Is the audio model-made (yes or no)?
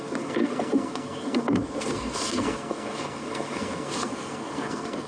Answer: yes